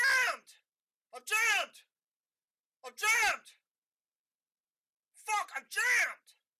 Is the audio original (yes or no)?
yes